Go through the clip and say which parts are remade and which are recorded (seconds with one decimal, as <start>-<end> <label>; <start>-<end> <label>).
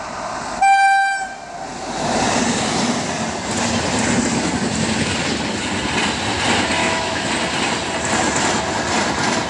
0.0-6.8 recorded; 6.8-7.3 remade; 7.3-9.5 recorded